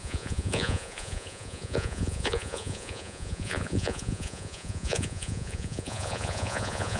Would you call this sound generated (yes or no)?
yes